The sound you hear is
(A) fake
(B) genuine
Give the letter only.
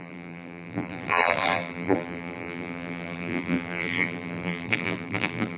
A